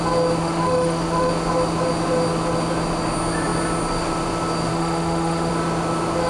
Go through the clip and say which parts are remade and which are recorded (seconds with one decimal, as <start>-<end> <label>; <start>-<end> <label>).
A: 0.0-0.4 recorded; 0.4-1.3 remade; 1.3-4.7 recorded; 4.7-5.5 remade; 5.5-6.3 recorded